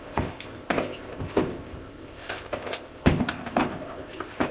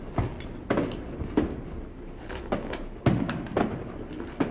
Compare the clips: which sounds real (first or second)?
second